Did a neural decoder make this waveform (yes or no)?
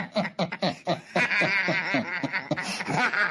no